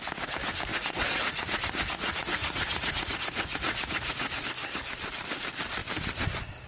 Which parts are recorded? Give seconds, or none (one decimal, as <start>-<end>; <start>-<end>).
0.0-0.7; 4.4-6.7